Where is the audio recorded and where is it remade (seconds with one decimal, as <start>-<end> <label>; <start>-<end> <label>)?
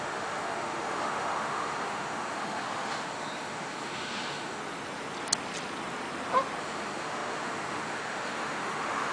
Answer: 0.0-4.6 remade; 4.6-6.6 recorded; 6.6-9.1 remade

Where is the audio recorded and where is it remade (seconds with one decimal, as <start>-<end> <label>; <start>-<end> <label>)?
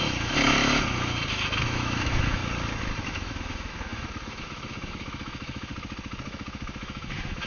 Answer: 0.0-2.4 remade; 2.4-3.0 recorded; 3.0-5.7 remade; 5.7-6.2 recorded; 6.2-7.5 remade